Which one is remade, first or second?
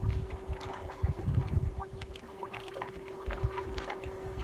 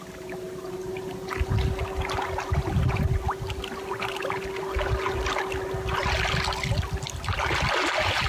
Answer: first